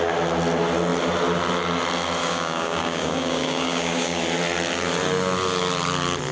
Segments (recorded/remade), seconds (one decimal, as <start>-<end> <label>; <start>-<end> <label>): 0.0-2.2 recorded; 2.2-4.2 remade; 4.2-6.3 recorded